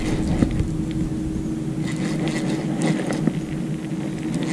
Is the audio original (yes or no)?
yes